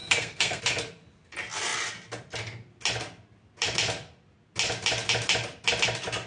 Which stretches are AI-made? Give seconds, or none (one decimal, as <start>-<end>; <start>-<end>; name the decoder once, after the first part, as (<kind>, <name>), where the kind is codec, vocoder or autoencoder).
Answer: 0.0-0.6 (codec, SNAC)